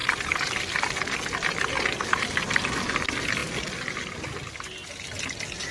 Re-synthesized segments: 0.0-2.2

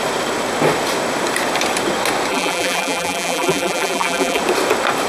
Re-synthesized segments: 2.3-4.4

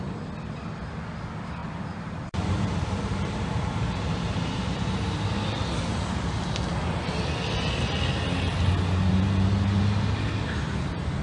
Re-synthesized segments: 1.6-4.8; 9.1-9.8

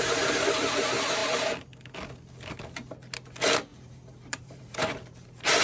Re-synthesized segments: 3.7-5.6